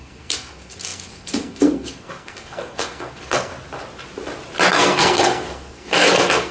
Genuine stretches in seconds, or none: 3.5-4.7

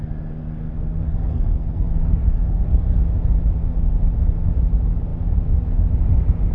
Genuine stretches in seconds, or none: 0.0-0.4; 3.0-6.5

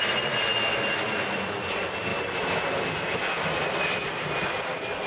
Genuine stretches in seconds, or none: 0.0-5.1